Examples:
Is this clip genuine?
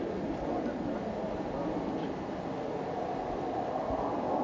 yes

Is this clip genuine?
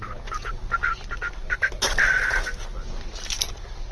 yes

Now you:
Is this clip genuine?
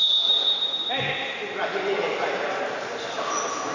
yes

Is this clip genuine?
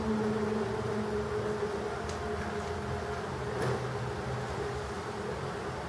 yes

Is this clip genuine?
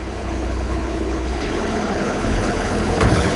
no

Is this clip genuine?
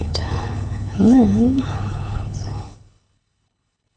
no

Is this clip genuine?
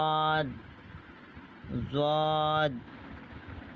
yes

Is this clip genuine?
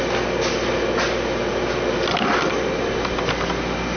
yes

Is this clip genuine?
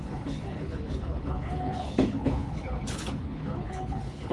no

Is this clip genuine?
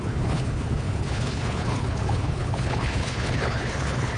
no